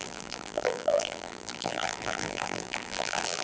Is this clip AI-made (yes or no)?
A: yes